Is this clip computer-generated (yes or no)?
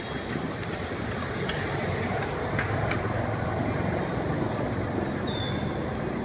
no